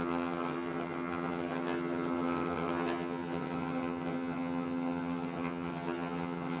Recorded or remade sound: remade